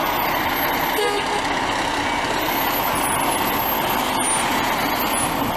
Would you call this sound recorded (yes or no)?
yes